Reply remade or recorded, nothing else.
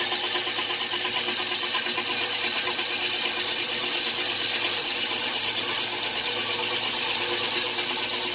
recorded